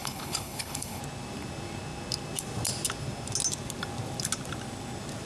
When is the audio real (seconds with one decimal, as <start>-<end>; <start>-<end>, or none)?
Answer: 1.0-5.3